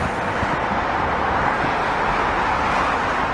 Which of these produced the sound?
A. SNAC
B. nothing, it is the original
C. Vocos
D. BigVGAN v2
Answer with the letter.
B